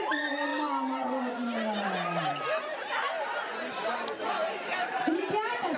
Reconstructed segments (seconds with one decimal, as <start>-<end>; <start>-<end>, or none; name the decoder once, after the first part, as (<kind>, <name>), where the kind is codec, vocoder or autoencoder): 0.0-5.8 (vocoder, BigVGAN v2)